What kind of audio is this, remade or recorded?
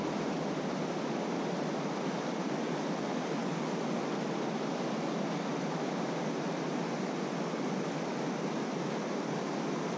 recorded